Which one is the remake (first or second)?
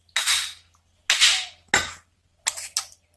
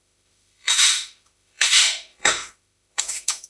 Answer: second